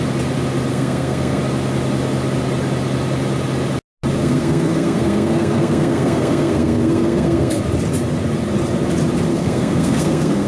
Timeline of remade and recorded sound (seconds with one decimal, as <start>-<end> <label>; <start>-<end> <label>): 0.0-0.7 recorded; 0.7-1.4 remade; 1.4-4.2 recorded; 4.2-7.6 remade; 7.6-9.3 recorded; 9.3-10.5 remade